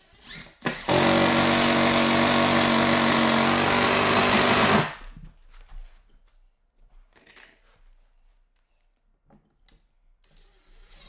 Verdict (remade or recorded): recorded